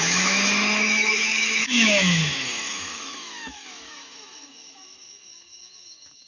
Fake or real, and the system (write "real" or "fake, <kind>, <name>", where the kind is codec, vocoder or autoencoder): fake, autoencoder, DAC-VAE